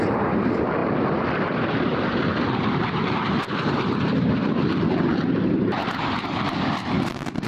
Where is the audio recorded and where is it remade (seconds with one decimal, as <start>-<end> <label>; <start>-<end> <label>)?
0.0-4.1 remade; 4.1-5.2 recorded; 5.2-7.5 remade